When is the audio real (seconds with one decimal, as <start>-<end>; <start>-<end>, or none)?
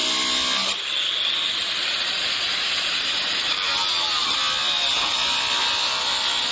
0.0-6.5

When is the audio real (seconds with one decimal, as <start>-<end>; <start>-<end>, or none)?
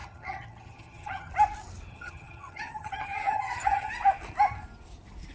1.3-1.9; 3.9-5.3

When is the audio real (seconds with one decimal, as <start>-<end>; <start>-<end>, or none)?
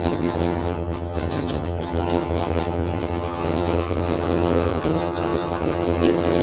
none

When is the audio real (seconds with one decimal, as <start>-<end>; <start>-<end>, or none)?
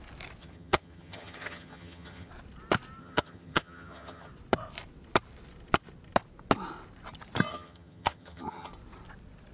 0.0-0.4; 2.3-3.0; 4.3-7.5; 8.7-9.5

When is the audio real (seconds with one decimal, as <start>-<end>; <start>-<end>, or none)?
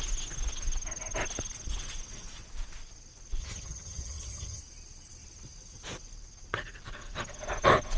0.0-3.4; 4.6-8.0